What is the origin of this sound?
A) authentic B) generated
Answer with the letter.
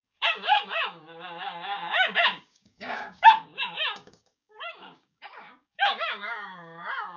B